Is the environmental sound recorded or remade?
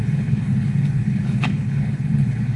remade